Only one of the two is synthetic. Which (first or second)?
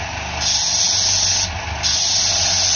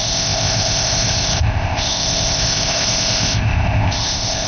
second